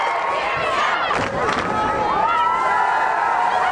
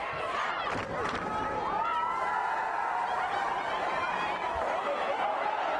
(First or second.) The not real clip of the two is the second